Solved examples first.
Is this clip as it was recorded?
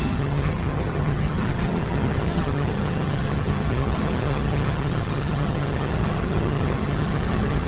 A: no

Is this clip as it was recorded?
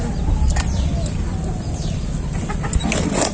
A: yes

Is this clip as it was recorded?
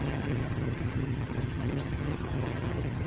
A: no